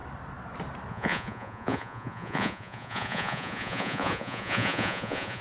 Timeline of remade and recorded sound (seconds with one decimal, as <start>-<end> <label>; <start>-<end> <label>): 0.0-0.9 recorded; 0.9-5.4 remade